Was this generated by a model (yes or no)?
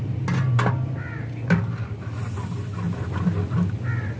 no